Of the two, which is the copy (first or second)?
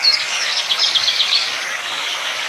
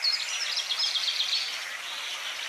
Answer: first